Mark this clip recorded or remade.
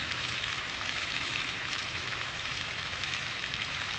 remade